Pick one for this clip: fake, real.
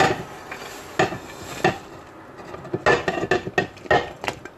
real